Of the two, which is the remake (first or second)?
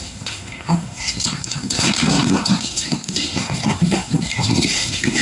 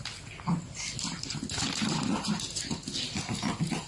first